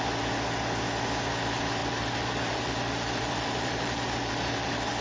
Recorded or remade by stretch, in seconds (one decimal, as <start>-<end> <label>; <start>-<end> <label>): 0.0-1.8 recorded; 1.8-5.0 remade